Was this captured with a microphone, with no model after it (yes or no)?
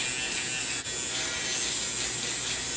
yes